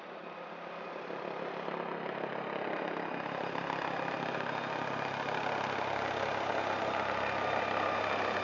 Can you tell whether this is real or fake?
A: real